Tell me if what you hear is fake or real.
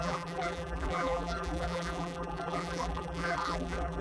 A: fake